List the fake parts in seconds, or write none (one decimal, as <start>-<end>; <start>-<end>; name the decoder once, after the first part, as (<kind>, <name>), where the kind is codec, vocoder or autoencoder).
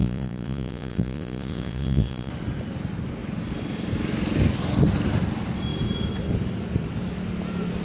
0.0-2.3 (vocoder, Vocos)